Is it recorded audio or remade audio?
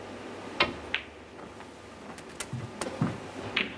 recorded